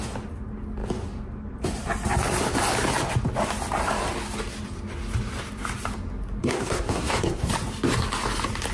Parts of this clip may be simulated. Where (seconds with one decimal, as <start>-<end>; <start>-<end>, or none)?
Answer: 6.4-7.5